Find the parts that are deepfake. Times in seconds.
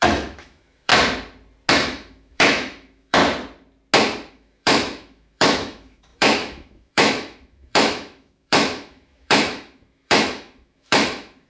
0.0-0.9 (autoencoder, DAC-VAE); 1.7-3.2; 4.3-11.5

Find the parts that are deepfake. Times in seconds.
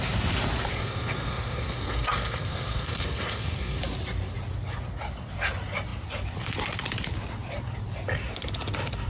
0.7-3.8 (codec, SNAC)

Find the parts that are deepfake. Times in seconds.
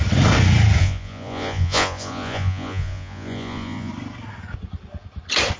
0.8-3.9 (vocoder, Vocos)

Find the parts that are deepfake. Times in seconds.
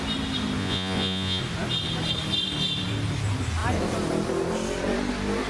0.6-1.4 (vocoder, Vocos)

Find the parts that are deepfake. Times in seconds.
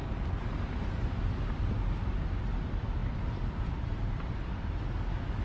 3.0-4.8 (vocoder, BigVGAN v2)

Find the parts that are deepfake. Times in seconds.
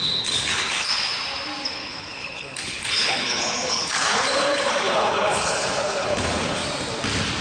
0.0-1.1 (codec, HILCodec); 1.7-6.6